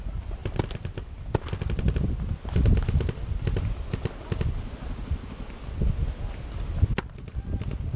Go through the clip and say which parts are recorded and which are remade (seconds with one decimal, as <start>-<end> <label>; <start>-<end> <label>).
0.0-8.0 recorded